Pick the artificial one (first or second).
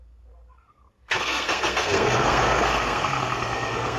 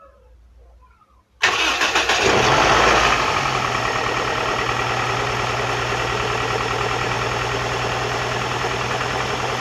first